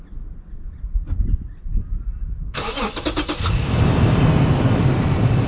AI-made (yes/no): no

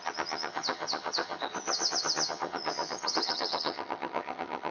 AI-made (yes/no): yes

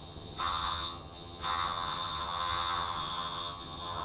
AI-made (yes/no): yes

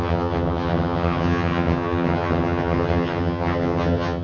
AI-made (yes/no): yes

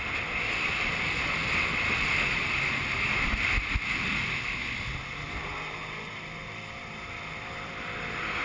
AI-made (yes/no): no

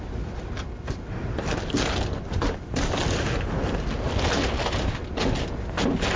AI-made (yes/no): no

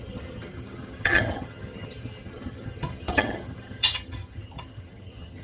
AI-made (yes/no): yes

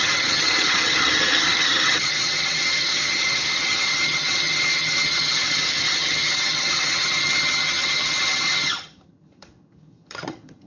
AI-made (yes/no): yes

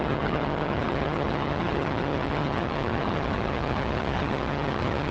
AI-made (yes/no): yes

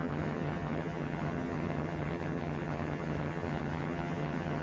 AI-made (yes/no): yes